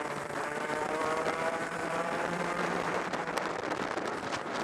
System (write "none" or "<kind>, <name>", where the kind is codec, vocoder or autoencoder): vocoder, BigVGAN v2